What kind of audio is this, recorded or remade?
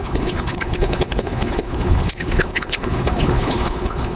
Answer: remade